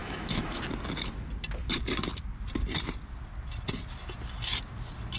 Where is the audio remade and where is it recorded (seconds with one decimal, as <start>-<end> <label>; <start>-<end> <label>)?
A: 0.0-0.6 remade; 0.6-5.2 recorded